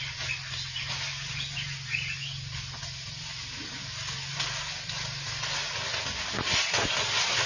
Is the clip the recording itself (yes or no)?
yes